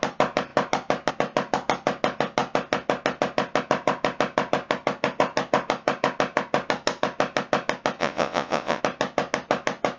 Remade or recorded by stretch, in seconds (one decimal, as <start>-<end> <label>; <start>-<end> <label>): 0.0-8.0 recorded; 8.0-8.8 remade; 8.8-10.0 recorded